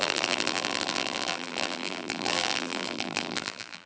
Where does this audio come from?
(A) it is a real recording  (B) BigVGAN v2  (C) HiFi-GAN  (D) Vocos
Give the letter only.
B